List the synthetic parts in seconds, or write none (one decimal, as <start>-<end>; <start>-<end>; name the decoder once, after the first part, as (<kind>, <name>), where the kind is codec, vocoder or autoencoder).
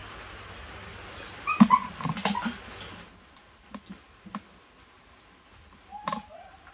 none